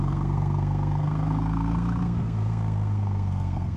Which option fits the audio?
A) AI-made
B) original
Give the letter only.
A